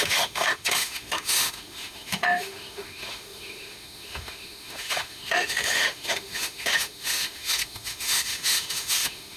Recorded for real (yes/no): no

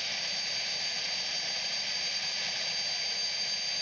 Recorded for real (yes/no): yes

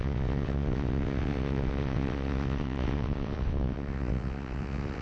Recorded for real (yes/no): no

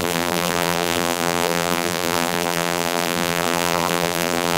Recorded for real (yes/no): no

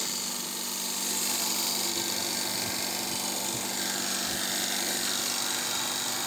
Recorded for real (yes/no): yes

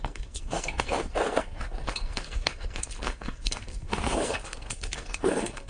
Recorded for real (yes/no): no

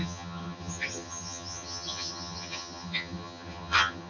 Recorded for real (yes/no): no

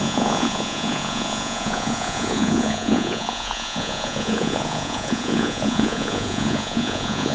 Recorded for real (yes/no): no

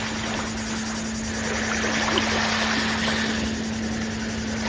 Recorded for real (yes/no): yes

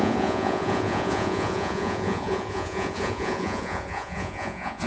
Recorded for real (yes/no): no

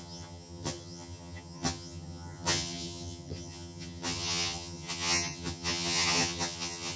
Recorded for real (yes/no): no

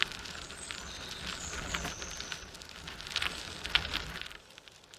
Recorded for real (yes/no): no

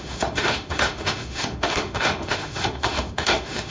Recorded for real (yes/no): no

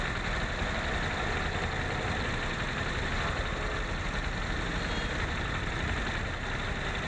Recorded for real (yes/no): yes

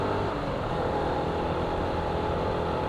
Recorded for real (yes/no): yes